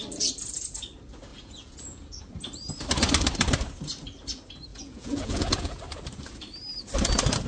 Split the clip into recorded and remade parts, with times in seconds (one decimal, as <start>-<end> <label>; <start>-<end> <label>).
0.0-1.3 recorded; 1.3-2.2 remade; 2.2-4.7 recorded; 4.7-5.8 remade; 5.8-7.5 recorded